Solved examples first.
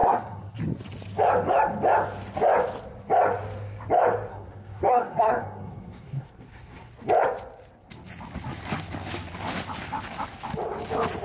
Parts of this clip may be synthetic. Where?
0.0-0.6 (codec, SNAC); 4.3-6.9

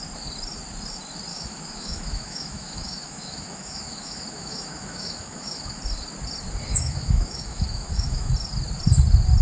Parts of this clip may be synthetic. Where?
1.3-5.8 (autoencoder, DAC-VAE); 6.7-8.3

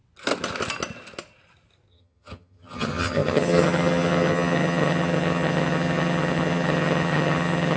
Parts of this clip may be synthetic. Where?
1.9-7.8 (vocoder, HiFi-GAN)

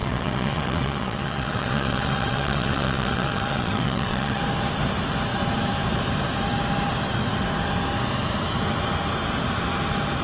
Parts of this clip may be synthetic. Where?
0.0-4.4 (vocoder, WaveNeXt)

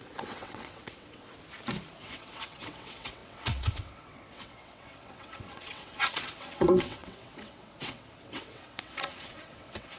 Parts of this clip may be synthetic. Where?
0.0-1.3 (vocoder, WaveNeXt); 2.0-10.0

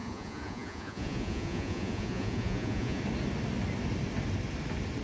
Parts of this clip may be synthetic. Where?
0.0-3.0 (vocoder, Vocos)

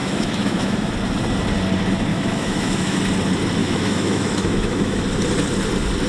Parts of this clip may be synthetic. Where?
0.0-0.9 (autoencoder, DAC-VAE); 2.1-3.0; 3.6-5.0

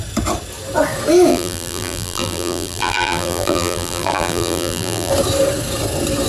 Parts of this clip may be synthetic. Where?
1.3-5.1 (vocoder, BigVGAN v2)